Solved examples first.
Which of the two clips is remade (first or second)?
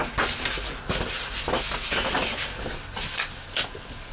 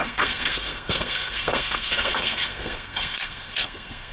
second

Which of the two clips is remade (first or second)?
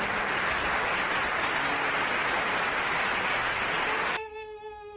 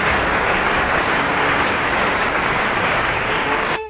second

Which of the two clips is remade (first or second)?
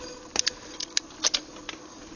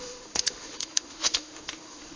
second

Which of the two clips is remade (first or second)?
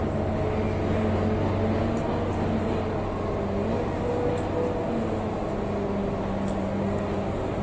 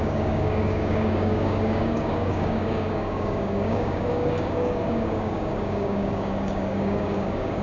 second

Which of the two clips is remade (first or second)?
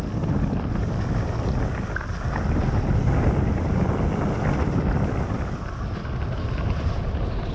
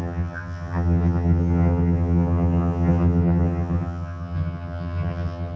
second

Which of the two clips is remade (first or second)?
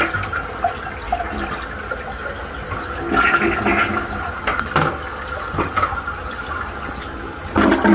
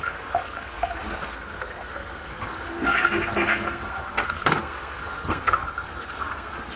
second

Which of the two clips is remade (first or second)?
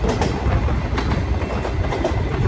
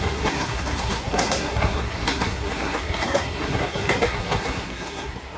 second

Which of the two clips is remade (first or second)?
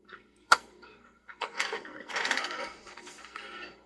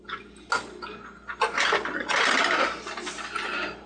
first